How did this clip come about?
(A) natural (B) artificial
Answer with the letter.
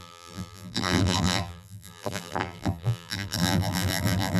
B